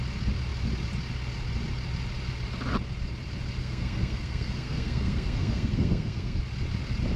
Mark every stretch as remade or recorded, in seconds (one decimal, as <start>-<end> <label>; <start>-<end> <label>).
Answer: 0.0-3.6 recorded; 3.6-6.4 remade; 6.4-7.2 recorded